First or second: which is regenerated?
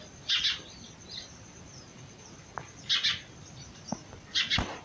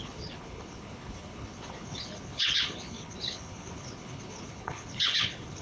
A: second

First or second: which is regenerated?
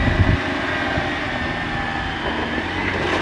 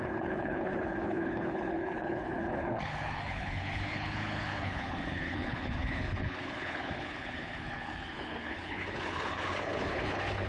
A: second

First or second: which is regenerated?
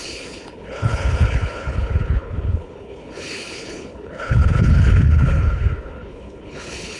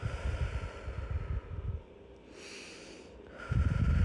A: first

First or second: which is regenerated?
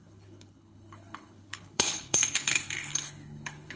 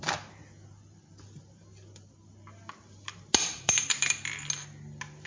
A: first